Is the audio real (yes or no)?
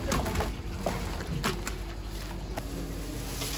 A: yes